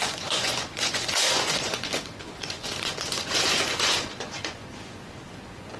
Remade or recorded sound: remade